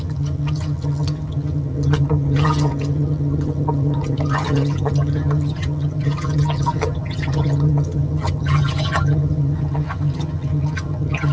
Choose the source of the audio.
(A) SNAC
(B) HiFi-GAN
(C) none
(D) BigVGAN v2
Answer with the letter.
B